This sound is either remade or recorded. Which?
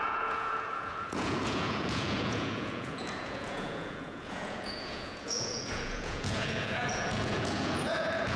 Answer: remade